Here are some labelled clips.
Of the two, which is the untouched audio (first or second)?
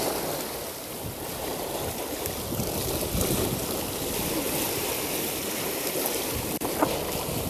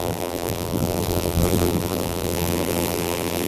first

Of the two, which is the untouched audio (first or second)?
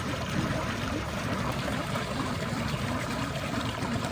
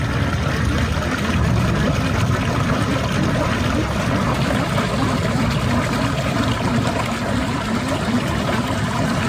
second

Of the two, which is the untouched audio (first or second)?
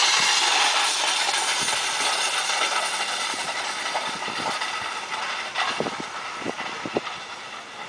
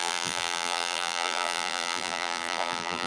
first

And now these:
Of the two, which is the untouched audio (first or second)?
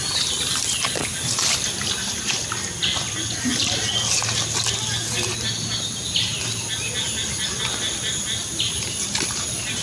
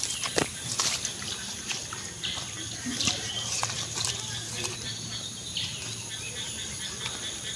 first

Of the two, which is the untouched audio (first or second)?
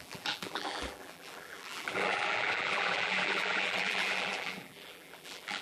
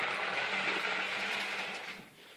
second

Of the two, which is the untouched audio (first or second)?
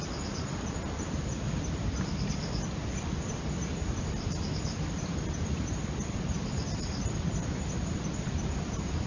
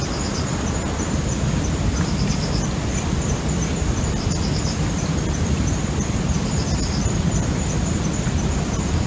second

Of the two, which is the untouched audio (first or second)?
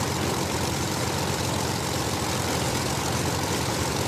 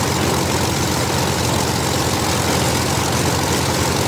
second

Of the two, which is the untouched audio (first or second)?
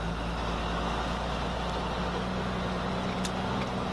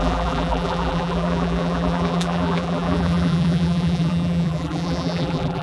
first